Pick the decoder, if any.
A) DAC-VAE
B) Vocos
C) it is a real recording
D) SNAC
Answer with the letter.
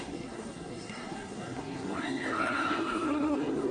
D